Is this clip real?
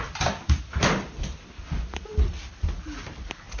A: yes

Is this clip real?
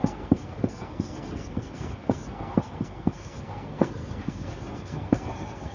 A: no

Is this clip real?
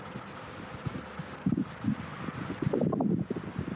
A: yes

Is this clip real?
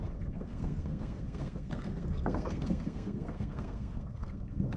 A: no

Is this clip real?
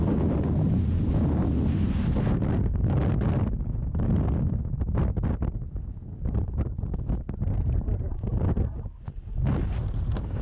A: yes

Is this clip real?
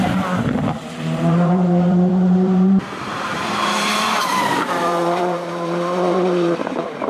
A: no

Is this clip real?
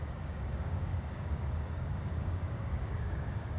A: no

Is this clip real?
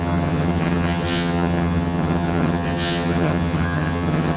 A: no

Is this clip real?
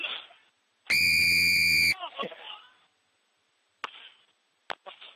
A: yes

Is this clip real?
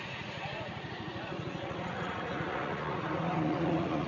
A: no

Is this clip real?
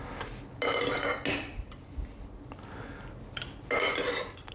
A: yes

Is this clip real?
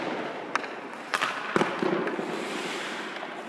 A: yes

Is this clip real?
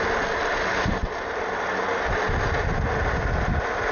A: yes